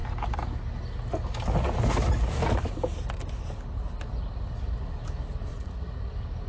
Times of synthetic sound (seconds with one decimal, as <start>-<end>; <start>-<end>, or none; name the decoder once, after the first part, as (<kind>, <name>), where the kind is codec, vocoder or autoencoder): 5.5-6.1 (vocoder, Vocos)